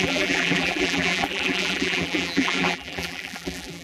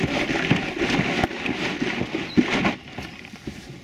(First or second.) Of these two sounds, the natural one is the second